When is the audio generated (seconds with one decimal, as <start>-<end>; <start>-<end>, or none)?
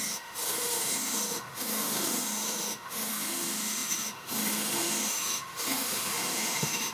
0.0-6.9